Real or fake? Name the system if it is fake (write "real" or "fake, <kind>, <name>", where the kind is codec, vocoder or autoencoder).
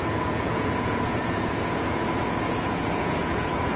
fake, vocoder, Vocos